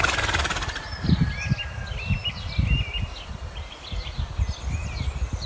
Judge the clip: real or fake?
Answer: real